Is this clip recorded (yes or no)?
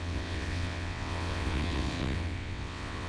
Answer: no